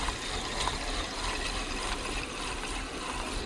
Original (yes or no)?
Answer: yes